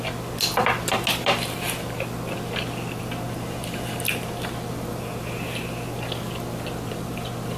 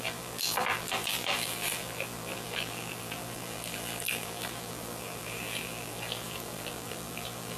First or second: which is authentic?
first